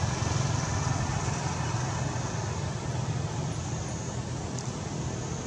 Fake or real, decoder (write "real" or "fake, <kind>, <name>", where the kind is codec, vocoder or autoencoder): real